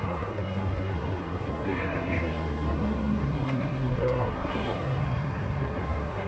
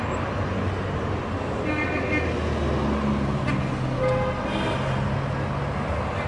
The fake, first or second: first